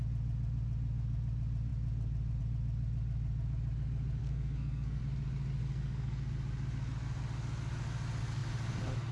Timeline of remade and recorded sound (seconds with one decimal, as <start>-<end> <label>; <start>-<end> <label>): 0.0-4.2 recorded; 4.2-5.0 remade; 5.0-5.6 recorded; 5.6-6.3 remade; 6.3-9.1 recorded